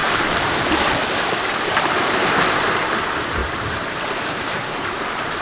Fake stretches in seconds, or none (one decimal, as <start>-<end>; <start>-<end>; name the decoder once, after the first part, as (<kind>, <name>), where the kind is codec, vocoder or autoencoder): 0.0-0.5 (vocoder, BigVGAN v2); 1.0-2.2; 3.4-4.7